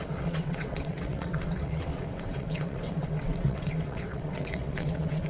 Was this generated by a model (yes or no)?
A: yes